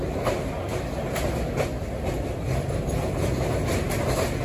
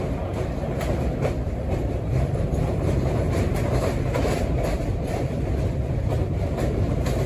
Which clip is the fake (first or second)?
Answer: second